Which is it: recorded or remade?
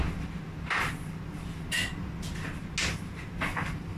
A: recorded